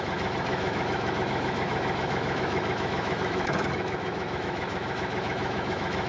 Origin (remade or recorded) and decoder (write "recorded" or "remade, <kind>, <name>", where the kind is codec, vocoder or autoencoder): remade, autoencoder, DAC-VAE